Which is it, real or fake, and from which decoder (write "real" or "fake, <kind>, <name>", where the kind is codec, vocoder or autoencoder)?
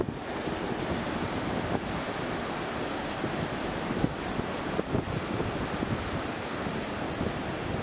real